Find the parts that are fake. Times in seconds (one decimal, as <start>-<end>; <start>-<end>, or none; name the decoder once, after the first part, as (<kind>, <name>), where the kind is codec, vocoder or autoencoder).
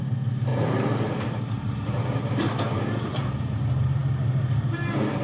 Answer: 0.5-3.6 (vocoder, BigVGAN v2)